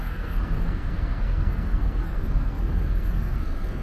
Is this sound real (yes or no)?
no